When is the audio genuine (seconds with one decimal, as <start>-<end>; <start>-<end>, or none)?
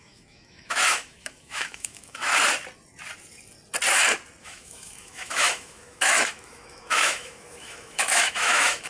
2.3-4.4